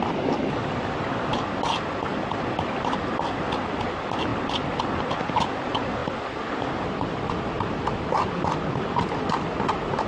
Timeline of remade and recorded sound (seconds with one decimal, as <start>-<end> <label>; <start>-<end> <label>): 0.0-10.1 recorded